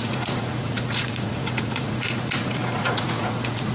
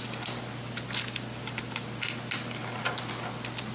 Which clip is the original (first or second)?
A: second